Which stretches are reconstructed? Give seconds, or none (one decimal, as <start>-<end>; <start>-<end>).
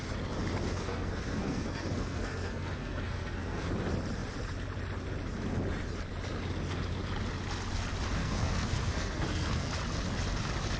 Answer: 0.7-3.7; 8.2-9.7